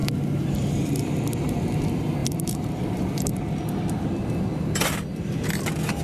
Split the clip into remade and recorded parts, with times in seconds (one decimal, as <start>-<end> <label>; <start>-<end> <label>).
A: 0.0-2.2 recorded; 2.2-3.4 remade; 3.4-6.0 recorded